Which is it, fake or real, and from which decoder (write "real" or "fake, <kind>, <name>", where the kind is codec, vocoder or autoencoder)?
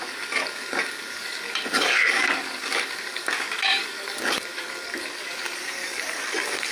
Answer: fake, codec, DAC